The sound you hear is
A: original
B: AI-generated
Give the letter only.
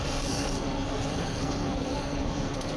B